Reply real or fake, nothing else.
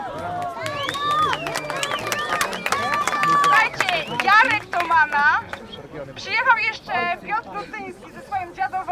real